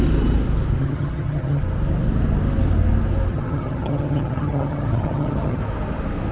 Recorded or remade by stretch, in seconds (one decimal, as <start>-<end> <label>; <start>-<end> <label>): 0.0-0.8 recorded; 0.8-1.6 remade; 1.6-3.3 recorded; 3.3-5.6 remade; 5.6-6.3 recorded